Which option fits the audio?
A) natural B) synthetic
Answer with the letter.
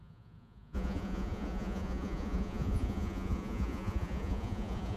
B